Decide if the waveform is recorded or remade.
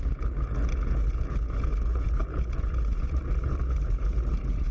remade